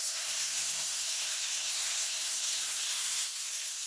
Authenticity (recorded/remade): remade